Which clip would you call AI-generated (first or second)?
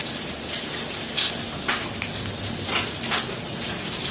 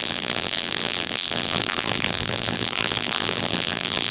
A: second